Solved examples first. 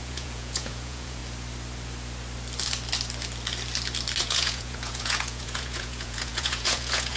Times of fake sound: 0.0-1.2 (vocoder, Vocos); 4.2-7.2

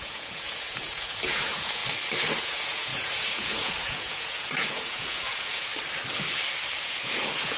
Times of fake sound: 0.0-1.8 (vocoder, Vocos); 2.4-5.7; 6.8-7.6

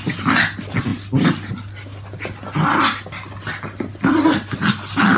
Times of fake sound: none

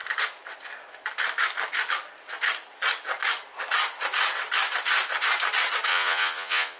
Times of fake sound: 5.9-6.8 (vocoder, Vocos)